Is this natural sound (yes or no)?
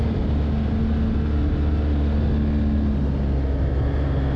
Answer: yes